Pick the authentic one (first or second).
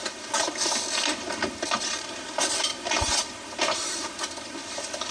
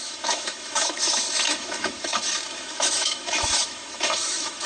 first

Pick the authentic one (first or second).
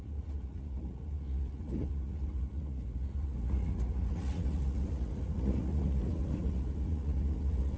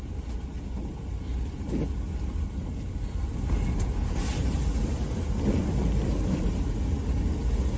second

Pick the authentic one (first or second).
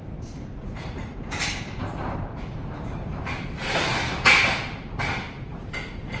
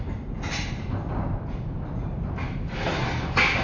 second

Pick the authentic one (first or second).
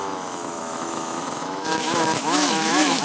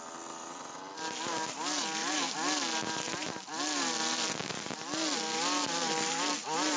second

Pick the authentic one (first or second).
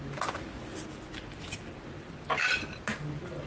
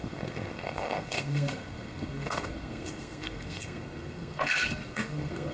first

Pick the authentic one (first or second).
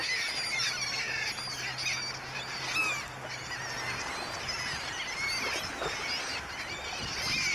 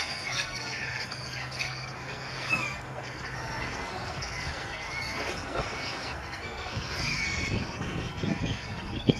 first